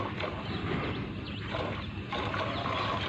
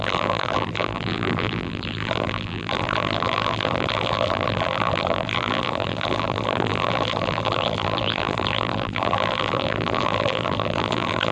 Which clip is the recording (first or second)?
first